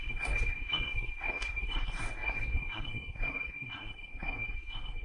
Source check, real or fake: fake